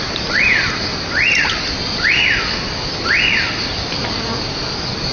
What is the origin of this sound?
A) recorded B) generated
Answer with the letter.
A